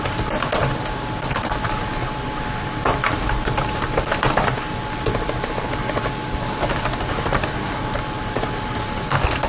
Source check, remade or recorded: recorded